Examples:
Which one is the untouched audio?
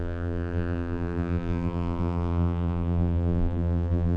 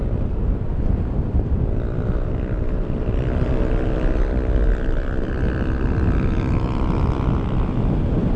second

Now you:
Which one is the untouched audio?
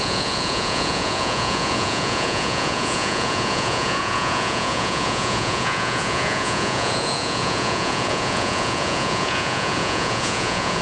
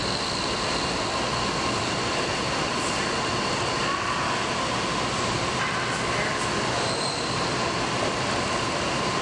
second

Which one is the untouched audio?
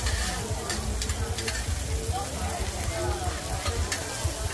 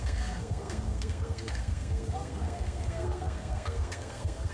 first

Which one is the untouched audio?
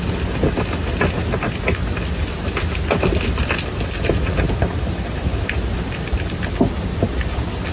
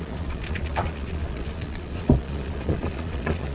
first